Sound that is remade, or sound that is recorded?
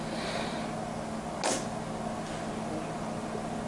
recorded